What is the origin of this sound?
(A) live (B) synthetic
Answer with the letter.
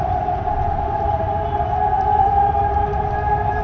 B